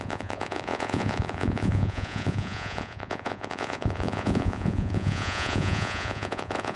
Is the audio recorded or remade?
remade